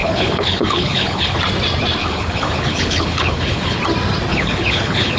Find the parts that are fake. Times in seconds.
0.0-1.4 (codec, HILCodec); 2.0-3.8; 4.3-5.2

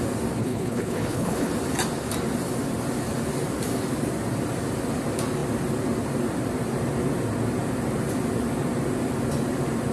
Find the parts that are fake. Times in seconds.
0.4-1.5 (codec, HILCodec)

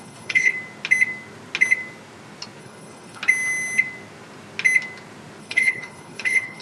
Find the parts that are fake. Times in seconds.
0.0-0.5 (codec, HILCodec); 2.6-3.2; 5.4-6.6

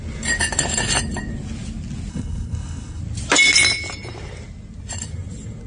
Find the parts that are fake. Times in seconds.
2.1-3.0 (codec, HILCodec)

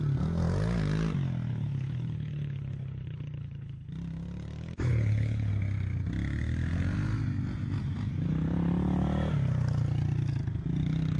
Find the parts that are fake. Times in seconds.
1.5-3.9 (codec, HILCodec); 4.9-5.5

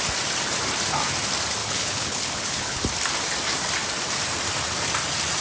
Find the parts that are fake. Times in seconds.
1.6-2.8 (codec, HILCodec)

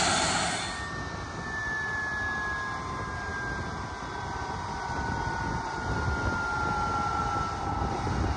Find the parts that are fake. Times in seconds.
none

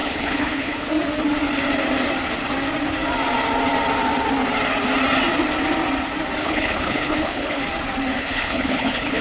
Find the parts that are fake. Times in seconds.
0.0-0.9 (codec, HILCodec); 6.4-7.6; 8.2-9.2